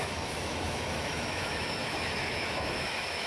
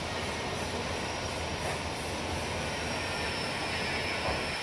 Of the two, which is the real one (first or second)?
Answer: second